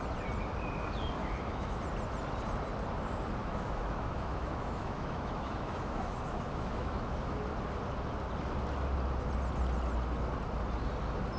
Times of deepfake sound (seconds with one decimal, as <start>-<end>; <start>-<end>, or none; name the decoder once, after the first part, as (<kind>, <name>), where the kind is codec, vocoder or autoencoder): 1.2-1.8 (autoencoder, DAC-VAE); 3.4-7.4